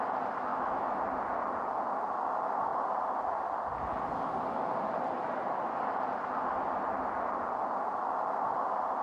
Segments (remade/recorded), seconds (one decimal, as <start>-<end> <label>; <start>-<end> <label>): 0.0-0.5 recorded; 0.5-1.0 remade; 1.0-9.0 recorded